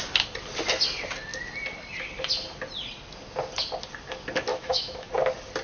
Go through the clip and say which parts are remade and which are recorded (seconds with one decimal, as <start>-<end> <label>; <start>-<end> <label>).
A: 0.0-4.5 recorded; 4.5-5.1 remade; 5.1-5.6 recorded